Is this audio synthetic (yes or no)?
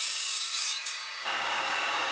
yes